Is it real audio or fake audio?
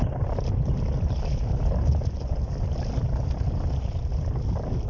real